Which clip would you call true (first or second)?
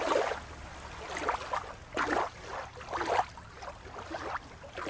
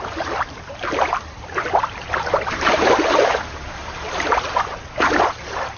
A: first